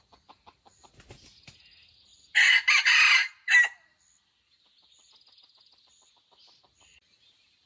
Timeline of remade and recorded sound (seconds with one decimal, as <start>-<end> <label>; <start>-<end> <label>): 0.0-7.7 recorded